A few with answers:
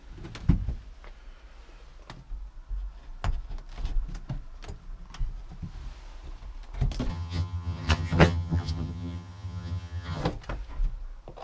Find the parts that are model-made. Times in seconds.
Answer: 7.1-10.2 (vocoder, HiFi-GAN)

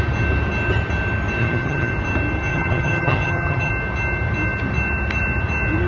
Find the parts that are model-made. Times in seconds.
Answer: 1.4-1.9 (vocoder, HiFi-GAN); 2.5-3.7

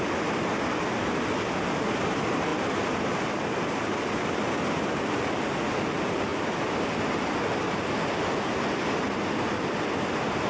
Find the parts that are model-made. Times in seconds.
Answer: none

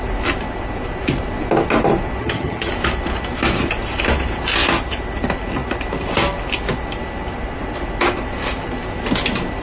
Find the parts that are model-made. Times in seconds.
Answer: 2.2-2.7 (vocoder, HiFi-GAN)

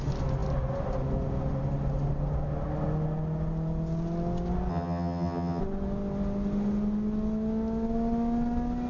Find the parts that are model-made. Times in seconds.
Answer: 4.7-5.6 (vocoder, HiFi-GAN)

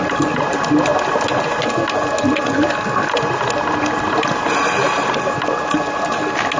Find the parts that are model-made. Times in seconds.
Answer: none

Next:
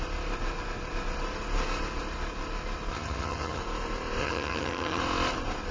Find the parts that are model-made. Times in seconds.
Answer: 2.9-3.6 (vocoder, HiFi-GAN); 4.2-5.0